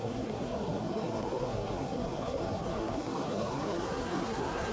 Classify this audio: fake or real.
fake